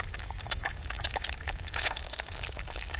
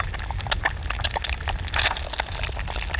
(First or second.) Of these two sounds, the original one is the second